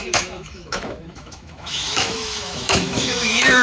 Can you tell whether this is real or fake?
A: fake